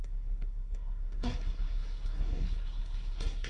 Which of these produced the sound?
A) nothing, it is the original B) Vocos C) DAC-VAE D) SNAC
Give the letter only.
D